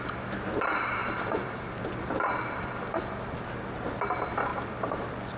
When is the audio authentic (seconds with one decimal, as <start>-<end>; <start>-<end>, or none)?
0.0-1.0; 3.9-4.5